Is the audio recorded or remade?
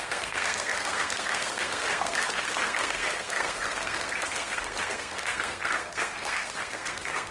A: remade